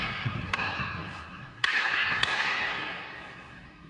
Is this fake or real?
fake